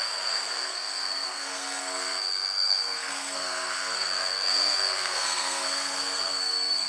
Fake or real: fake